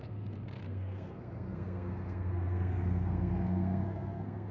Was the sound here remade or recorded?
remade